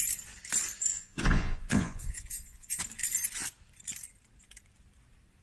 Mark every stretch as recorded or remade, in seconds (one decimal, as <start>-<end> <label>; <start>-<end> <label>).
0.0-0.9 recorded; 0.9-2.8 remade; 2.8-5.4 recorded